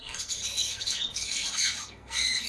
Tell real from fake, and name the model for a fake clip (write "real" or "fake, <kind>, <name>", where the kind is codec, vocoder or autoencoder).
fake, codec, SNAC